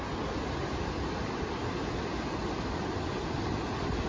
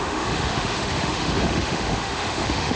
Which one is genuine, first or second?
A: first